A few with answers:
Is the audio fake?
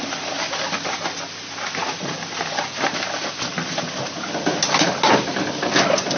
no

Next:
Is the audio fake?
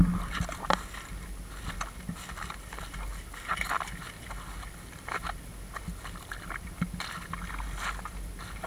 no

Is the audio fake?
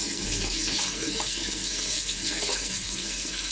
yes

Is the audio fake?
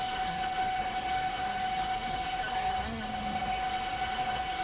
yes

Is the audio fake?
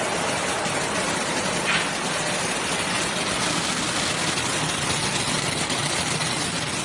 no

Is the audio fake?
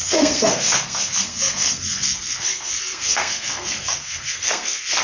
yes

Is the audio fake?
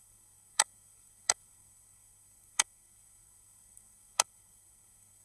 yes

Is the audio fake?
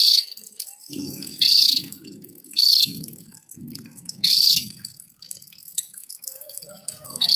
yes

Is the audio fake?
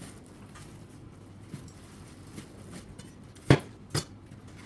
no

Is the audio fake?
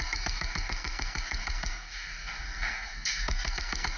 yes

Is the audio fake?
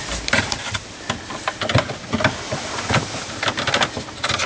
no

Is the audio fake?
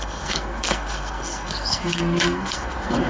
yes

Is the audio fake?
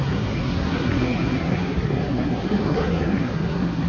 yes